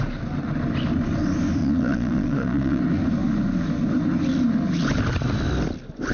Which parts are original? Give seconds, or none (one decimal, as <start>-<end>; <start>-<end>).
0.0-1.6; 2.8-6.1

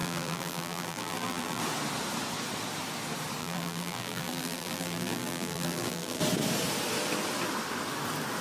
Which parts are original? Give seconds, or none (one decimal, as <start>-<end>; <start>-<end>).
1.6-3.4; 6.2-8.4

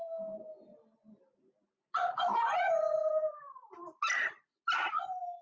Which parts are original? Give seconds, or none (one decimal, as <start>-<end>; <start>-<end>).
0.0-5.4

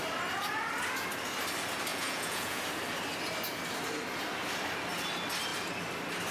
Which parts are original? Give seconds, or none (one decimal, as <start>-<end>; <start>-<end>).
0.0-1.9; 2.6-6.3

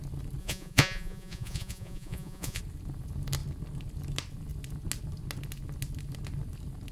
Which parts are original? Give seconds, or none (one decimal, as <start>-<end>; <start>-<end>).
0.0-0.4; 2.6-6.9